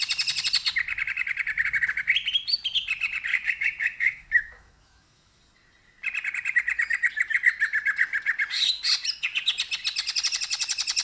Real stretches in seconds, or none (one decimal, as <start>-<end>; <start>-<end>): 0.0-3.3; 5.4-11.0